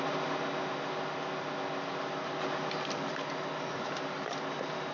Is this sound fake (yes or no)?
no